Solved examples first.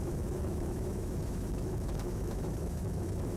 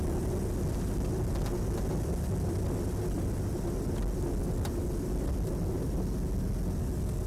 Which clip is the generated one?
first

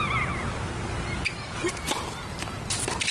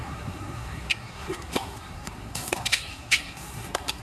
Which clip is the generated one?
second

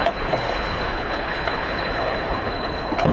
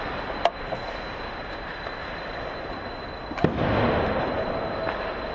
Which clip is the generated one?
first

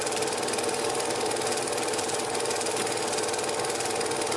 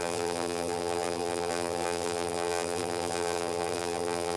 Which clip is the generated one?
second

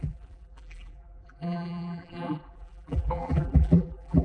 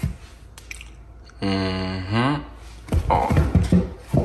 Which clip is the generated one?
first